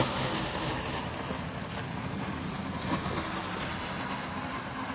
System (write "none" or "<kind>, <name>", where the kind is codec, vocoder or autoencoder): none